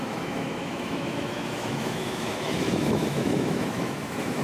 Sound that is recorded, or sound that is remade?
remade